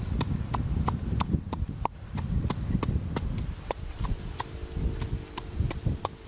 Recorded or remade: recorded